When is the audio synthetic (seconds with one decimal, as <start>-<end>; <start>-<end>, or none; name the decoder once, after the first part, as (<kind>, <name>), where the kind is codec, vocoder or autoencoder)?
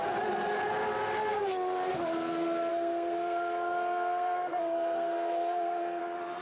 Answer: 2.7-6.0 (codec, SNAC)